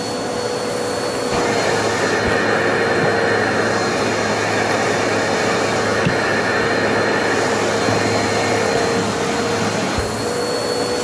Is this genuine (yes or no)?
yes